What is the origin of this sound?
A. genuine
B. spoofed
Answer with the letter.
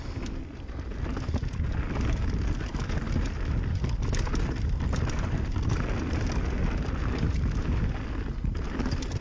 A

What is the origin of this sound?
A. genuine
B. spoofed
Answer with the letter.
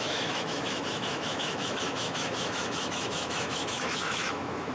B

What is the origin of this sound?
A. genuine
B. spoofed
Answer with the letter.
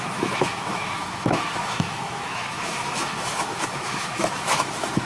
B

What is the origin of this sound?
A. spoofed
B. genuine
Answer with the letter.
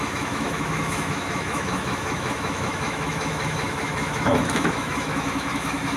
A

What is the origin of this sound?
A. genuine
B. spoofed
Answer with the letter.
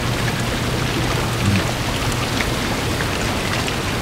A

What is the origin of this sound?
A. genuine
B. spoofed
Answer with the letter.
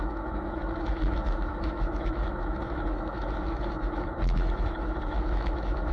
B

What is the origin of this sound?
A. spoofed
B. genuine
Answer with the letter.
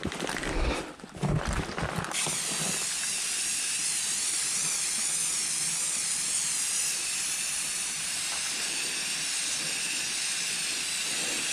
B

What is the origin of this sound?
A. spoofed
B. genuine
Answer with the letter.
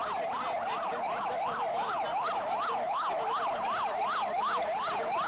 B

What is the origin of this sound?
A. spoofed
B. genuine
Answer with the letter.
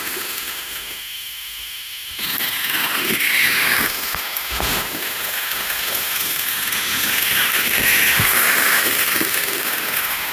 A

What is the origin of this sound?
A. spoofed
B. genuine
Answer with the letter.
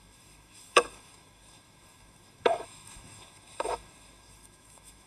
A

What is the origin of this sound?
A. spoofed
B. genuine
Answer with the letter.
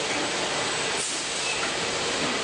B